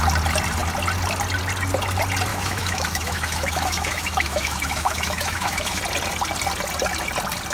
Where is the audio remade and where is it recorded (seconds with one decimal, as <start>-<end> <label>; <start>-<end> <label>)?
0.0-2.3 recorded; 2.3-5.8 remade; 5.8-7.5 recorded